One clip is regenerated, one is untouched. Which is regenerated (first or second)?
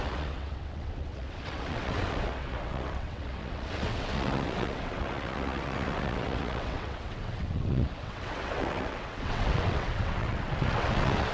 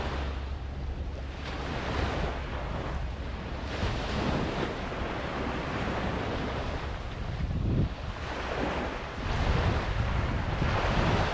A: first